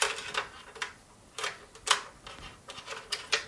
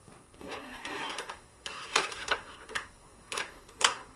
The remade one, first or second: second